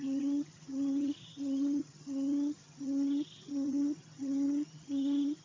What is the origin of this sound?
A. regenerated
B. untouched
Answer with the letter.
A